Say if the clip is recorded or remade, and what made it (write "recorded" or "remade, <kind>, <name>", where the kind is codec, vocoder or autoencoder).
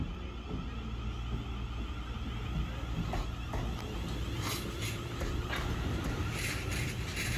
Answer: recorded